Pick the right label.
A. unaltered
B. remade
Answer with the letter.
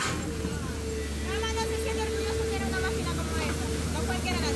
A